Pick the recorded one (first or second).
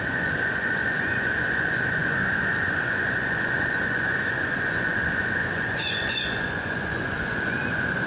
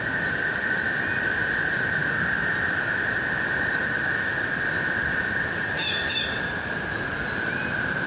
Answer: second